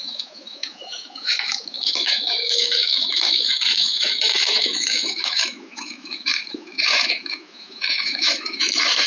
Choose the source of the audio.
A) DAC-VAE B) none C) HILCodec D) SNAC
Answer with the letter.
A